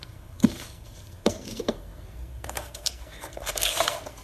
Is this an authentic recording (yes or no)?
no